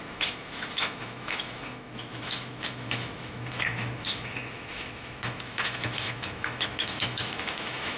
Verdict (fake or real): fake